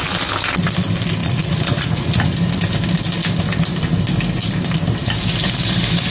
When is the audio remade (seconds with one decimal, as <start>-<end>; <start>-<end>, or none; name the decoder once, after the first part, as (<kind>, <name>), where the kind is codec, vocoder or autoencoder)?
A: 1.2-2.3 (vocoder, Vocos)